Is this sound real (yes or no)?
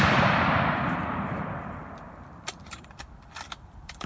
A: no